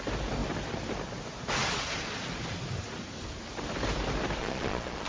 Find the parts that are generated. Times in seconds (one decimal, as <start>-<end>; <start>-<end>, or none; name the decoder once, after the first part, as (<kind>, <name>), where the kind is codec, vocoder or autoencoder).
4.4-5.1 (vocoder, Vocos)